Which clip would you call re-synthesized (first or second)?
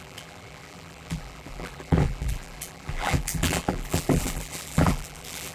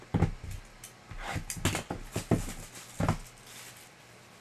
first